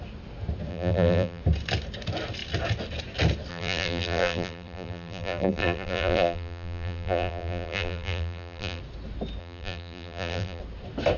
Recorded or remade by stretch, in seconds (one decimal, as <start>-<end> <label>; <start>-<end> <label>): 0.0-0.7 recorded; 0.7-1.4 remade; 1.4-3.5 recorded; 3.5-8.8 remade; 8.8-9.4 recorded; 9.4-10.6 remade; 10.6-11.2 recorded